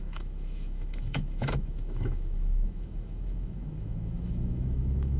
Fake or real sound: fake